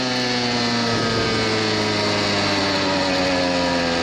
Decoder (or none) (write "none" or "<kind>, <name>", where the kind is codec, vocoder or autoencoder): none